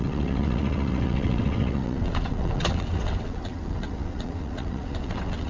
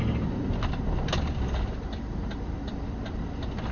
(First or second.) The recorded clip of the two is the second